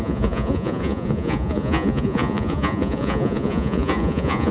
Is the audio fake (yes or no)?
yes